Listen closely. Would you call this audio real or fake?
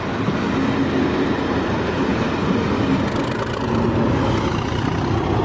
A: real